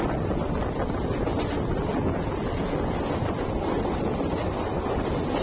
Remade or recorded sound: recorded